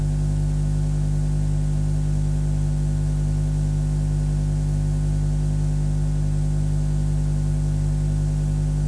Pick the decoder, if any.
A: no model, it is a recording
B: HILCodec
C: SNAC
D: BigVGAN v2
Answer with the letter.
A